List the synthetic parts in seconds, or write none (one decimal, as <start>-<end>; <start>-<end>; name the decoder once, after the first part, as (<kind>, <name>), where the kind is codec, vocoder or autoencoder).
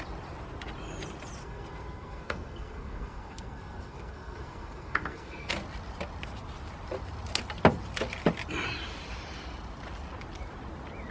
1.4-5.5 (codec, SNAC)